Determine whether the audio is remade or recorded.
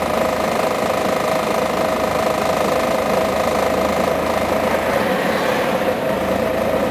recorded